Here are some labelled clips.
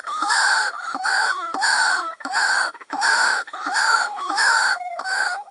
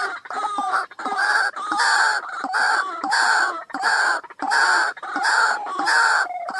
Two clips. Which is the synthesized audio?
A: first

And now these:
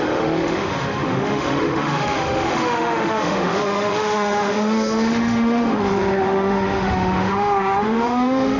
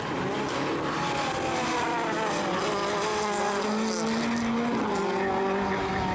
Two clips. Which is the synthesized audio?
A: first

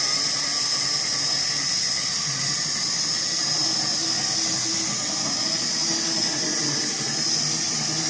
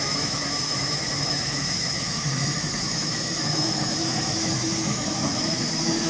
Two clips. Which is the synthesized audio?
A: second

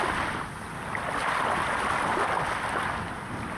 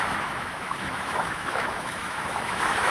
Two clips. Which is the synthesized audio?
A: second